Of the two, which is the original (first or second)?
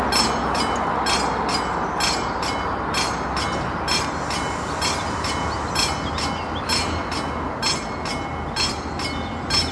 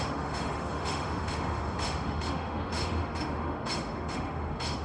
first